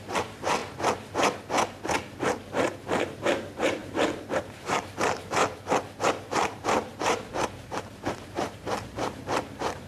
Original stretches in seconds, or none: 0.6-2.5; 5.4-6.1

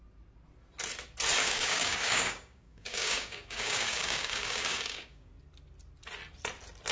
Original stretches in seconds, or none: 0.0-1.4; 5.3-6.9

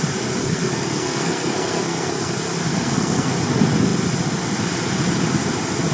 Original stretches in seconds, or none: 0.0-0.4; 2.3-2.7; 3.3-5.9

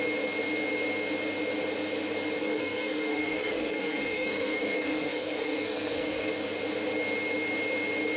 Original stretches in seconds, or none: 0.0-2.4; 6.3-8.2

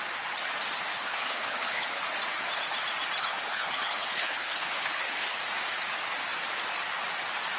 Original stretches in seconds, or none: 0.0-0.9; 2.0-3.2; 5.4-7.6

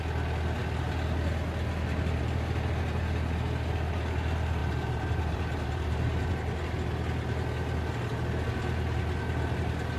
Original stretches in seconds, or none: 0.0-4.6; 6.3-10.0

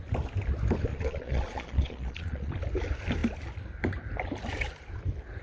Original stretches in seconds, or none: 0.0-0.9; 2.5-5.4